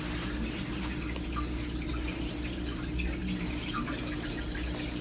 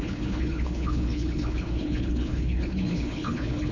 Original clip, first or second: first